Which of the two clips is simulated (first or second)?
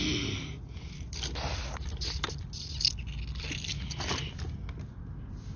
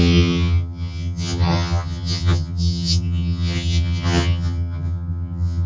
second